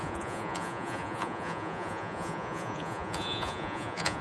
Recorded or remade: remade